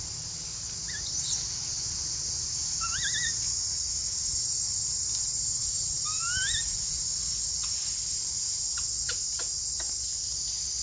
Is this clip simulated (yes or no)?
no